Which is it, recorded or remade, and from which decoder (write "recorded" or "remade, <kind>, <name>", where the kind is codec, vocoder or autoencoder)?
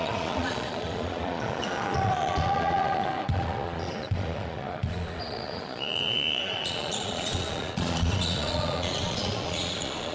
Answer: remade, vocoder, Vocos